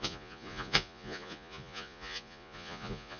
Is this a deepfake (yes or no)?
yes